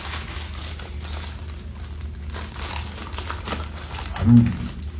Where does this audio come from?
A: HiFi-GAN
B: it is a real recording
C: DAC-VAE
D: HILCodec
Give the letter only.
B